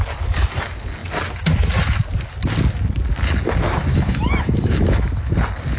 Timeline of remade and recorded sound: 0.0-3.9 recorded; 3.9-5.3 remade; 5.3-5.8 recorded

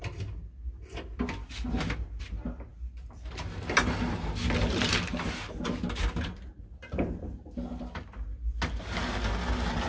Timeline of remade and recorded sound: 0.0-9.9 recorded

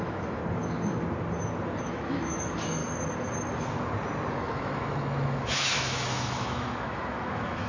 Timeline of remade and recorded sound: 0.0-0.4 remade; 0.4-1.8 recorded; 1.8-2.8 remade; 2.8-4.3 recorded; 4.3-7.7 remade